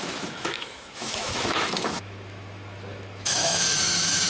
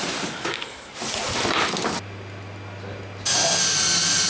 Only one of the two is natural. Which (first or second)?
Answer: second